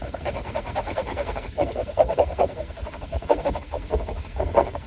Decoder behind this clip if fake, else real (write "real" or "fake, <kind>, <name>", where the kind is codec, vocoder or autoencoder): fake, codec, SNAC